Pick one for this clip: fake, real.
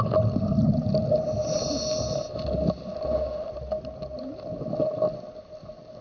real